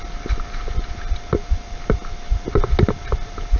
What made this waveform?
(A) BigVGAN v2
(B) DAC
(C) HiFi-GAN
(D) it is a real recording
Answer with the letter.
D